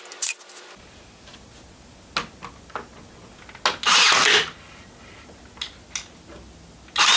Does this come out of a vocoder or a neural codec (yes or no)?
no